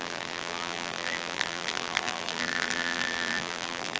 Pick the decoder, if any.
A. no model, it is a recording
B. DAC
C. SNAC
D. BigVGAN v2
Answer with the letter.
D